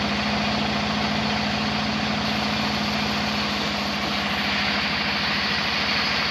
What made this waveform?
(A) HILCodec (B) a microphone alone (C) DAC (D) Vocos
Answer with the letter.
B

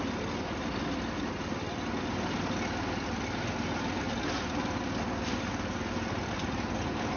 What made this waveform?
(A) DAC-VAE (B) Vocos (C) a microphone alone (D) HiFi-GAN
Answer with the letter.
C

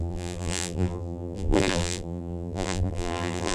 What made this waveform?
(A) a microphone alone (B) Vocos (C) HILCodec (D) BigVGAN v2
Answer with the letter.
D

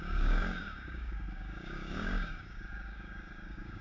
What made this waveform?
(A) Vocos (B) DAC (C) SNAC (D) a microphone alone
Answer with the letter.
B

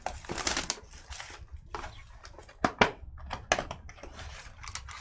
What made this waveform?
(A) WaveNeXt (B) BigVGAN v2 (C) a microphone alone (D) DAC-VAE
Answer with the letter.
C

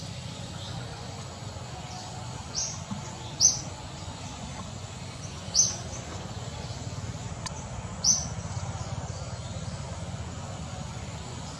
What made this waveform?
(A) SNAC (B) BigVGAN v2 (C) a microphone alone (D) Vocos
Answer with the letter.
D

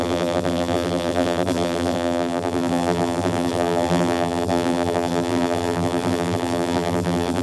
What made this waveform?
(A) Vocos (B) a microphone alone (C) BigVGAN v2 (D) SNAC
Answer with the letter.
C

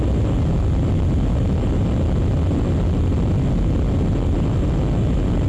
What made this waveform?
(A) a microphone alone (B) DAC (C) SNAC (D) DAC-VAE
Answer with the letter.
A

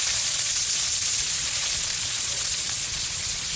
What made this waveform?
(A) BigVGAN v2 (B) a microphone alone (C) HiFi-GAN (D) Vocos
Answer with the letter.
D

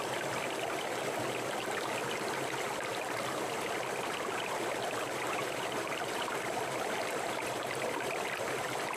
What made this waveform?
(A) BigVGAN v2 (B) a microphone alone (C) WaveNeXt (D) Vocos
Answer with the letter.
A